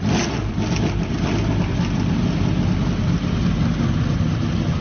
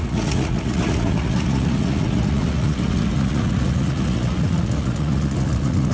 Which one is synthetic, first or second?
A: second